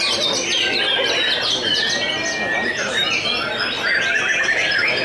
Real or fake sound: real